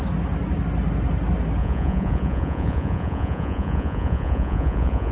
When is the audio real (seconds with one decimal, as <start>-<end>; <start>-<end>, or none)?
0.0-1.6